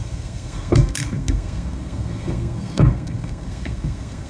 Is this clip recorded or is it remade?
remade